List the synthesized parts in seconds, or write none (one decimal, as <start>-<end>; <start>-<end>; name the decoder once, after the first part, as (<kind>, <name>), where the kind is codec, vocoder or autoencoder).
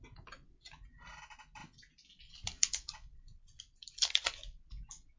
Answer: 1.6-4.7 (vocoder, BigVGAN v2)